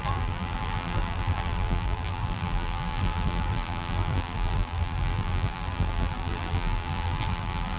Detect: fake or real fake